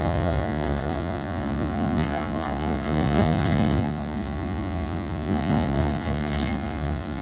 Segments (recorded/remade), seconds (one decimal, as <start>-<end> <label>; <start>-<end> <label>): 0.0-7.2 remade